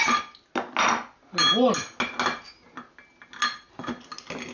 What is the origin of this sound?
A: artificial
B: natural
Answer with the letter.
B